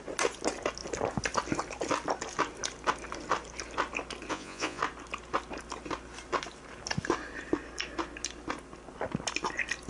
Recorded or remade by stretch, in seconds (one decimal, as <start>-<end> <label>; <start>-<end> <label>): 0.0-4.3 recorded; 4.3-4.8 remade; 4.8-9.9 recorded